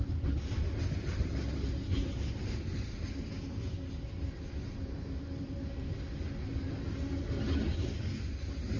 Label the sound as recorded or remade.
recorded